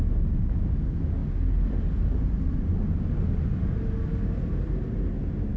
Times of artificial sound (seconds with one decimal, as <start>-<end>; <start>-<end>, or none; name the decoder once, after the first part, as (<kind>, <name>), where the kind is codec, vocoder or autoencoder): none